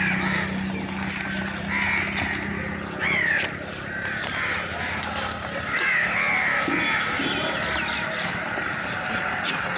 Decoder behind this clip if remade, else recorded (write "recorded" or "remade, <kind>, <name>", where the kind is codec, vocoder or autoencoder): recorded